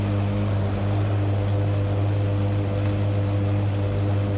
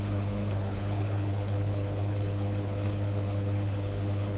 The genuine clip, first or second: first